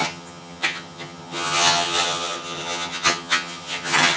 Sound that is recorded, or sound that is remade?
remade